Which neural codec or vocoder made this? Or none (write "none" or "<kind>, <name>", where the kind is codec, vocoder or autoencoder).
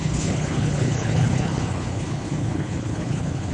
codec, HILCodec